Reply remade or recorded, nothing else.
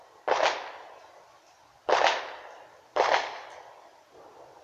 recorded